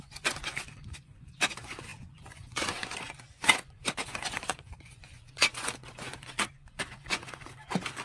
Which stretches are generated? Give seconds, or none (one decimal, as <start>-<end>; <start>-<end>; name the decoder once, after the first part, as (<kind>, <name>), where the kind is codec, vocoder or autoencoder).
0.0-8.0 (vocoder, Vocos)

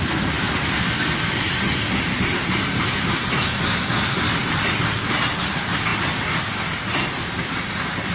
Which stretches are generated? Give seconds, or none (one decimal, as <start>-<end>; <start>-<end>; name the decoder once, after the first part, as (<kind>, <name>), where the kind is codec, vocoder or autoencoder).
5.9-6.5 (vocoder, BigVGAN v2)